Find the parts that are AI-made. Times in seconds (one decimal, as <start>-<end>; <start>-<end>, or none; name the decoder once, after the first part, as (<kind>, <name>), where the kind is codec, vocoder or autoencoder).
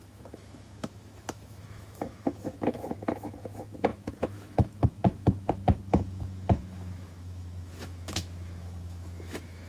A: 0.0-9.7 (autoencoder, DAC-VAE)